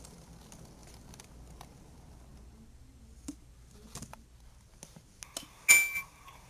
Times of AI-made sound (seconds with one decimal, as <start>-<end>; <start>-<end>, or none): none